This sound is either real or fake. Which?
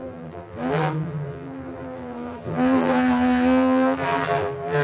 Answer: fake